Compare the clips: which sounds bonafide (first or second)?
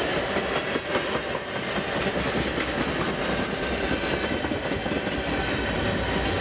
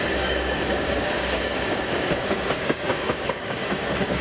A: first